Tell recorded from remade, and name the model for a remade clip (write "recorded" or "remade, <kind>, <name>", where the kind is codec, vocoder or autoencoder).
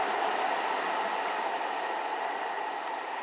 recorded